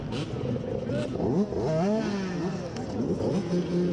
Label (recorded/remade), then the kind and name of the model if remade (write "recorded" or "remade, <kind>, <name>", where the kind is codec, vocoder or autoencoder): recorded